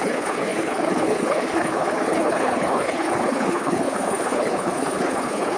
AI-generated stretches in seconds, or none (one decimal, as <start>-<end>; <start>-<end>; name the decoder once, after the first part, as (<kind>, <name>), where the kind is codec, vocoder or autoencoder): 0.0-5.6 (codec, HILCodec)